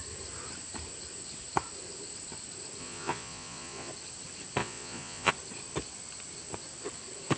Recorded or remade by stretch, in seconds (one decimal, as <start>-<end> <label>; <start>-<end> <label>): 0.0-2.8 recorded; 2.8-3.9 remade; 3.9-4.6 recorded; 4.6-5.3 remade; 5.3-7.4 recorded